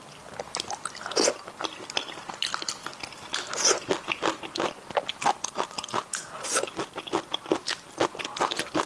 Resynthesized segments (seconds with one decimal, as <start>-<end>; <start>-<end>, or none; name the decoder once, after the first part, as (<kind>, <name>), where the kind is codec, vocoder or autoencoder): none

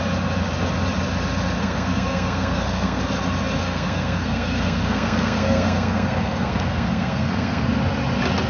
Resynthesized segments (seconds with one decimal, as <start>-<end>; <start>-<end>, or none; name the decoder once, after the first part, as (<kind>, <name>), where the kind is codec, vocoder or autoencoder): 1.6-3.0 (codec, SNAC); 3.6-7.7

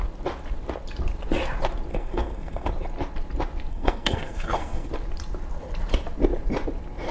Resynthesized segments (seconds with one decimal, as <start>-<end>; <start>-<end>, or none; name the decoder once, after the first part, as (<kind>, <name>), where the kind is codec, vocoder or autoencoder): 1.9-2.7 (codec, SNAC); 3.7-4.9

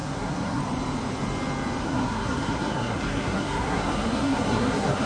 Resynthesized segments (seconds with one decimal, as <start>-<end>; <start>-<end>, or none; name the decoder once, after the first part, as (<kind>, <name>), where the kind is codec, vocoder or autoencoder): 0.0-0.6 (codec, SNAC); 1.8-5.1

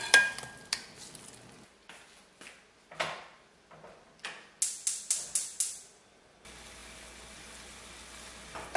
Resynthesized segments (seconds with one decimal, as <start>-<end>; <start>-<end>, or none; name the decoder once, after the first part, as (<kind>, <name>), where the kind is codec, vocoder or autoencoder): none